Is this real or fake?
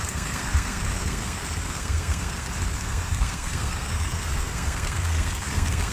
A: fake